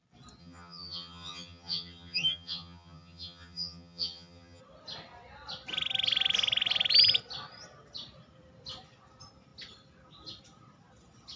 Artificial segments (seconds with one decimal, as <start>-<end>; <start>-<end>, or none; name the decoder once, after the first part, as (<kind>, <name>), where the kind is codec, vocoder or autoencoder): 0.4-4.6 (vocoder, HiFi-GAN)